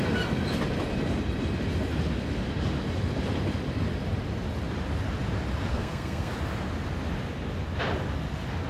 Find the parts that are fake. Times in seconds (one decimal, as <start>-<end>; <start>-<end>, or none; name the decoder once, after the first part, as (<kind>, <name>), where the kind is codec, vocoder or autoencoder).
5.7-6.3 (codec, SNAC)